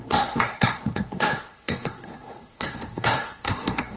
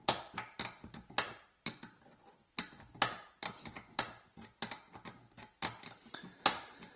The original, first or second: second